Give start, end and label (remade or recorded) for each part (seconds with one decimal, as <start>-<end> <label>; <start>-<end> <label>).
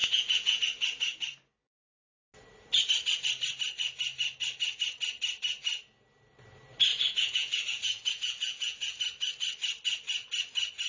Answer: 0.0-0.6 remade; 0.6-6.9 recorded; 6.9-9.0 remade; 9.0-10.9 recorded